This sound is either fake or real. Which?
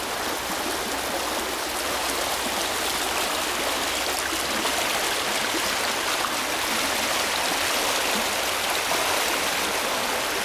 real